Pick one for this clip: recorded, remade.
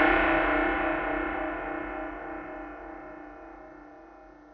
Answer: recorded